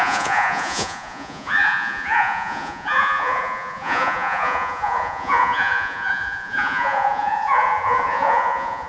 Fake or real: fake